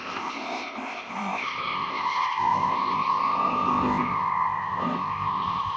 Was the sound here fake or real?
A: fake